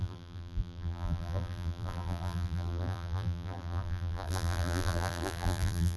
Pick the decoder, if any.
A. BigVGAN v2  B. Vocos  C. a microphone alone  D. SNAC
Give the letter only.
A